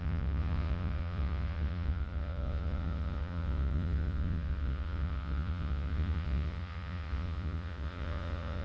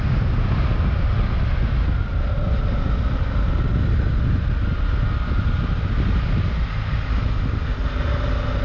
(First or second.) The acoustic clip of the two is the second